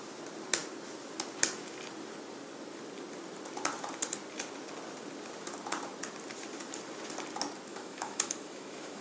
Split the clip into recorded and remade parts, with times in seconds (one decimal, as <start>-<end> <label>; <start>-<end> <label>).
0.0-7.7 recorded; 7.7-9.0 remade